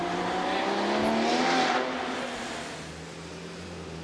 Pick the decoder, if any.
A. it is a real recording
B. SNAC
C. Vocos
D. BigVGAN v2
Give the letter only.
A